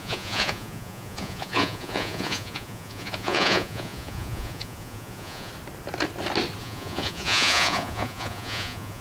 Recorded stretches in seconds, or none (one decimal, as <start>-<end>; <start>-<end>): 5.5-6.6